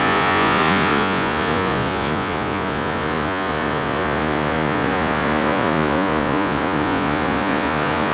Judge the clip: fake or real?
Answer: fake